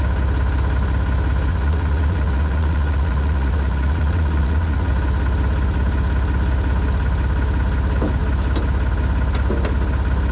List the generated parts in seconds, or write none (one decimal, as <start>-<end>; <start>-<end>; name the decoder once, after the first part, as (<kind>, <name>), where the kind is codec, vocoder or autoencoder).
1.5-4.9 (vocoder, Vocos)